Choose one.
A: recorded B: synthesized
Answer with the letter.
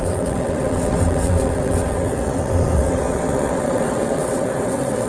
B